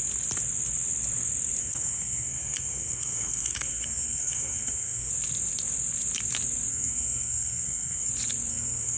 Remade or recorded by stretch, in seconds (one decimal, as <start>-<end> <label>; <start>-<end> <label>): 0.0-1.6 recorded; 1.6-5.1 remade; 5.1-6.7 recorded; 6.7-8.1 remade; 8.1-8.5 recorded; 8.5-9.0 remade